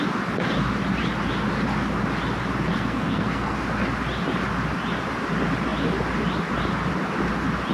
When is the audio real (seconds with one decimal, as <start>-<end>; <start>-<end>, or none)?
0.0-2.7; 3.6-7.7